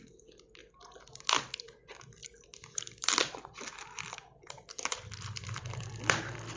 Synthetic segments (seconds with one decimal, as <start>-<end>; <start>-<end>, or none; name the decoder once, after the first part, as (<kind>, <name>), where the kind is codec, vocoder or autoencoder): 0.6-1.4 (vocoder, BigVGAN v2); 2.2-6.6